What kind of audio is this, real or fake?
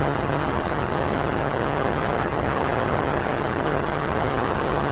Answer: fake